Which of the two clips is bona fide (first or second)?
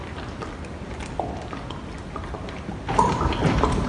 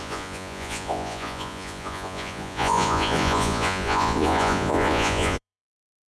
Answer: first